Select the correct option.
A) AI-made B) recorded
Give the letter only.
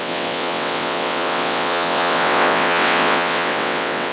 A